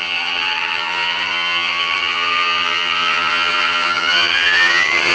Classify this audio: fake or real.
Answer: fake